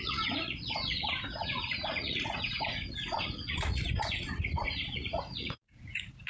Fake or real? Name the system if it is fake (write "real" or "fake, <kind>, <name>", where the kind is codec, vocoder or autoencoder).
fake, vocoder, Vocos